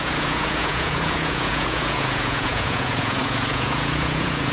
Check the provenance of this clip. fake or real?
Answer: fake